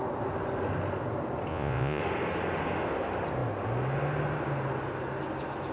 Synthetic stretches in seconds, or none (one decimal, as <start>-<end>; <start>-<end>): 1.5-2.0